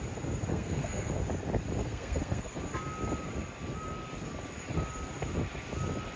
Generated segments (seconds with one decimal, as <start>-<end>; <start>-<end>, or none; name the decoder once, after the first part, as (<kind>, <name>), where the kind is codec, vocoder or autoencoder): 0.5-1.1 (codec, SNAC); 1.8-2.6